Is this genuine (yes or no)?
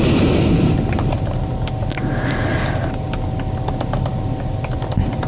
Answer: yes